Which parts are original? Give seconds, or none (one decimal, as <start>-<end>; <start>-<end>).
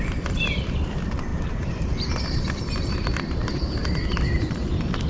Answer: none